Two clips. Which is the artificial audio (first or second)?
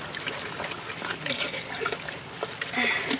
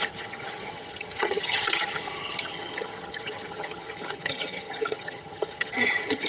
second